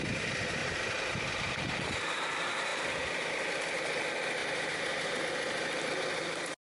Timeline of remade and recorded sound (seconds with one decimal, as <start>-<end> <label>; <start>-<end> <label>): 0.0-0.6 recorded; 0.6-1.3 remade; 1.3-4.4 recorded; 4.4-5.2 remade; 5.2-6.8 recorded